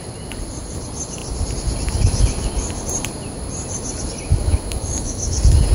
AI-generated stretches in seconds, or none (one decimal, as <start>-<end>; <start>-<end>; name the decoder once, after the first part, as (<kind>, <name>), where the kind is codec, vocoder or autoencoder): 4.3-5.2 (autoencoder, DAC-VAE)